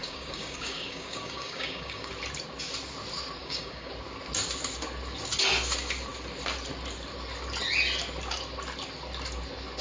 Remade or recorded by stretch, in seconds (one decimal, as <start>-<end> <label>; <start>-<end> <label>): 0.0-2.1 remade; 2.1-3.4 recorded; 3.4-3.9 remade; 3.9-9.8 recorded